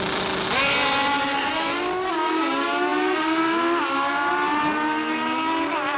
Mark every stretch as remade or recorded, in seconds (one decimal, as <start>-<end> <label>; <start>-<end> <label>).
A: 0.0-1.4 recorded; 1.4-2.1 remade; 2.1-6.0 recorded

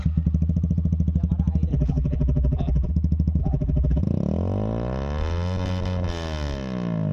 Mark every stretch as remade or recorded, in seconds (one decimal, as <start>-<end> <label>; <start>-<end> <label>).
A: 0.0-1.7 recorded; 1.7-2.9 remade; 2.9-3.4 recorded; 3.4-4.0 remade; 4.0-7.1 recorded

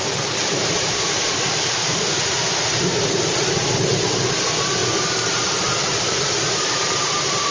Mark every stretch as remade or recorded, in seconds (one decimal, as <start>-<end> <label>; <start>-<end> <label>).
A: 0.0-0.5 recorded; 0.5-3.3 remade; 3.3-4.8 recorded; 4.8-7.5 remade